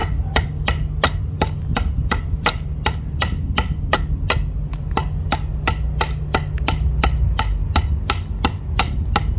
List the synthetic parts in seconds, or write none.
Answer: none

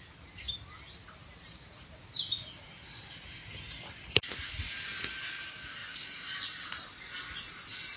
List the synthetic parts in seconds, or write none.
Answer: 1.0-2.1 (vocoder, BigVGAN v2); 3.4-4.5

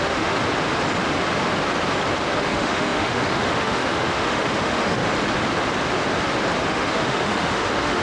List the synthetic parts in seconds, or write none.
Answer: 0.0-0.4 (autoencoder, DAC-VAE); 2.4-5.0; 6.7-8.0